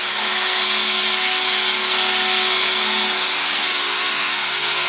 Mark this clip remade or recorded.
remade